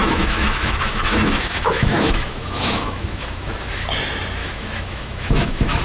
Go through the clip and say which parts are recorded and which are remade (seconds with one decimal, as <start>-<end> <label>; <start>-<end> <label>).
0.0-3.5 remade; 3.5-4.4 recorded; 4.4-5.8 remade